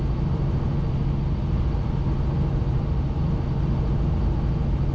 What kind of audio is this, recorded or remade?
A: recorded